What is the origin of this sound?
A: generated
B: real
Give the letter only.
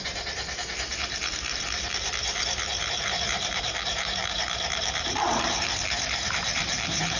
A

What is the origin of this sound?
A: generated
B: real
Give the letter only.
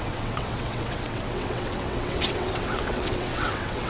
A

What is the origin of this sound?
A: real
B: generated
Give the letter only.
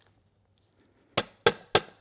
A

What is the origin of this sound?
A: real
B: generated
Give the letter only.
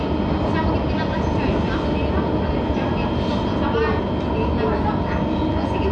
A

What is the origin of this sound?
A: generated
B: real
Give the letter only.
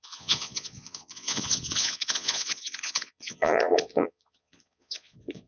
A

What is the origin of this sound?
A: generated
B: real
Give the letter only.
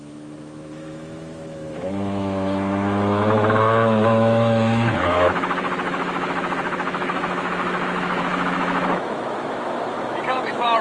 A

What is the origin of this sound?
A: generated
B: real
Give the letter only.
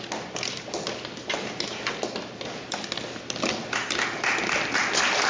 B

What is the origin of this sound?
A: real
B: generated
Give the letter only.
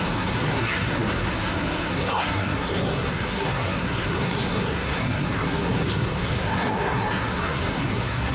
B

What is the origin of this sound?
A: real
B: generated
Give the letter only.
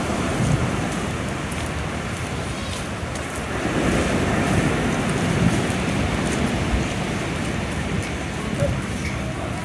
A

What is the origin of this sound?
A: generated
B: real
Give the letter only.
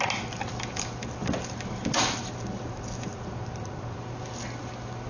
B